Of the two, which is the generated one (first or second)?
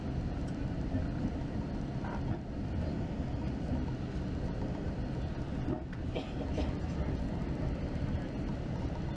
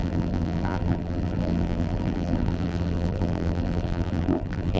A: second